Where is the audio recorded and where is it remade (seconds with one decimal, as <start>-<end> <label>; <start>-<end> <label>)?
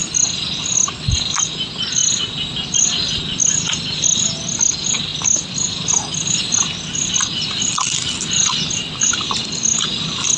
0.0-10.4 recorded